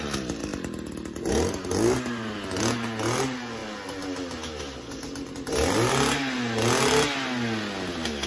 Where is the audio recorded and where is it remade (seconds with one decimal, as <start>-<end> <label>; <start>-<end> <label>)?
0.0-8.3 recorded